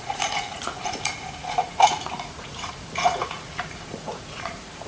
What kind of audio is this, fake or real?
fake